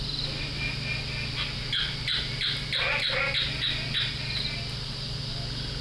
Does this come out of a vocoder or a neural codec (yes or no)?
no